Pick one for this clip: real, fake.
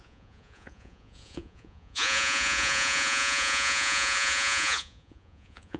fake